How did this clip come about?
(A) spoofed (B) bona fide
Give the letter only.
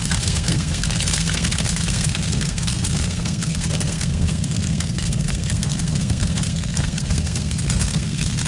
A